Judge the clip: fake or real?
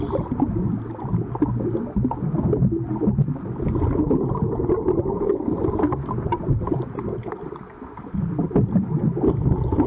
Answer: real